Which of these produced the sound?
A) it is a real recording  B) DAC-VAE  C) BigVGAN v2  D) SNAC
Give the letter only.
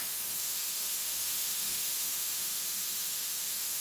B